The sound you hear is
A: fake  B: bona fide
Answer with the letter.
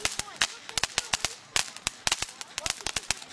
B